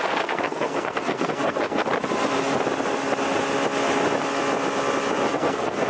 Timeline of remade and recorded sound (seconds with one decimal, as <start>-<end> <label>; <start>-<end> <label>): 0.0-1.8 remade; 1.8-5.3 recorded; 5.3-5.9 remade